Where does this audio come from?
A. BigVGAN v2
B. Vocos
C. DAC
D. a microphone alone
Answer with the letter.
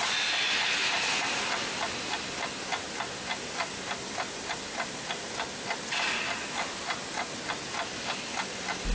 D